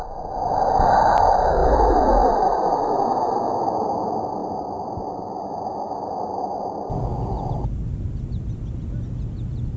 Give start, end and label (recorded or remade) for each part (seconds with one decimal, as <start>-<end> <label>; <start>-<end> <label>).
0.0-1.6 recorded; 1.6-3.2 remade; 3.2-4.4 recorded; 4.4-6.8 remade; 6.8-9.8 recorded